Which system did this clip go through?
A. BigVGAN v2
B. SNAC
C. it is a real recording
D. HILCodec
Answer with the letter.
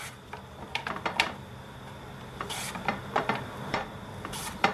A